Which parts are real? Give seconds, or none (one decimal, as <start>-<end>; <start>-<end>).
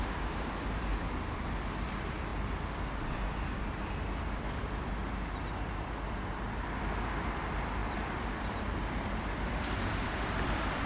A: 2.3-4.2; 5.0-6.8